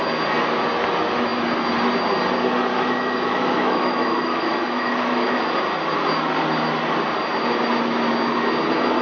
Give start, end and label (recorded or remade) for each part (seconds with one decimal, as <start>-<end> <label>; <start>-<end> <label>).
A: 0.0-2.7 recorded; 2.7-5.4 remade; 5.4-9.0 recorded